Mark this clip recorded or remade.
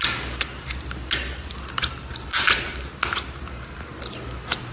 recorded